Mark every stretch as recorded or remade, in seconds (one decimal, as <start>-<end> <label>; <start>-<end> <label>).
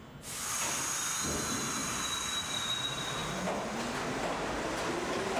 0.0-1.8 recorded; 1.8-2.3 remade; 2.3-5.4 recorded